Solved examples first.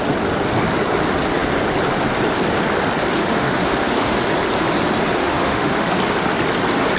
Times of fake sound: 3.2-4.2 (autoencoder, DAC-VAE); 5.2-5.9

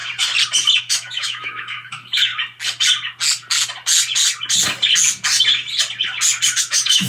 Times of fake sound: 0.8-2.3 (autoencoder, DAC-VAE); 6.6-7.1

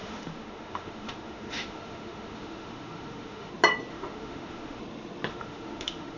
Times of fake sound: 0.0-3.5 (autoencoder, DAC-VAE); 3.9-4.8; 5.3-6.2